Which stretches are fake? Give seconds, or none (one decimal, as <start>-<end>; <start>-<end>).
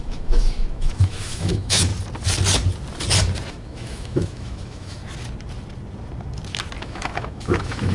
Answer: 0.0-1.9; 3.5-5.0; 6.8-7.9